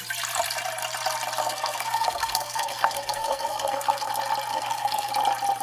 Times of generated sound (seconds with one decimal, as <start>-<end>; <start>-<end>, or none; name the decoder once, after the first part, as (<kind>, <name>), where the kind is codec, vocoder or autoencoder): 1.4-4.1 (codec, SNAC); 4.5-5.1